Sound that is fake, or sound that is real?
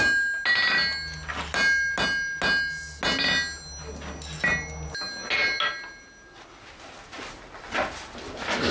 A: real